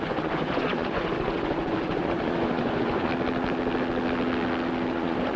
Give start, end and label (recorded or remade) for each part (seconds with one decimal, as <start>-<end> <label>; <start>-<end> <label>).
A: 0.0-3.1 remade; 3.1-4.9 recorded; 4.9-5.4 remade